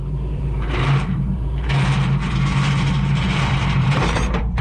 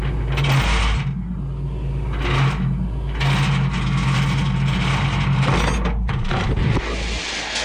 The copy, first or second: first